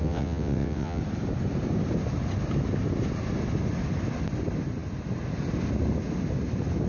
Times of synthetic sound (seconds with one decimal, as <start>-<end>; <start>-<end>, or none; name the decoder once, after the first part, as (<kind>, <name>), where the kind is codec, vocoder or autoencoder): 0.0-1.0 (vocoder, WaveNeXt)